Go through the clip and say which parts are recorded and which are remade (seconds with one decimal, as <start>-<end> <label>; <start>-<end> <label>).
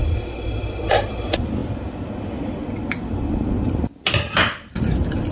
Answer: 0.0-5.3 recorded